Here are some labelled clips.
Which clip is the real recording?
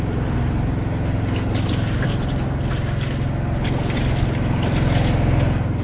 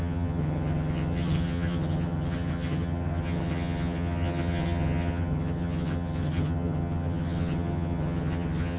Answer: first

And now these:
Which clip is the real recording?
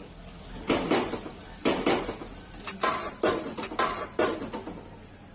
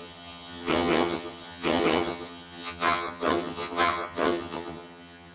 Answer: first